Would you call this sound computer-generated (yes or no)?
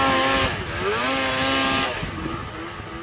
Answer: no